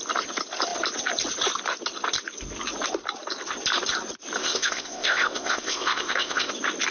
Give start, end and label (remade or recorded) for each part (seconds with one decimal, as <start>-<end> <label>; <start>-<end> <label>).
0.0-4.4 recorded; 4.4-6.5 remade; 6.5-6.9 recorded